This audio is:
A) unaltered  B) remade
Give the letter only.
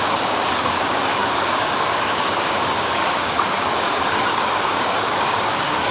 B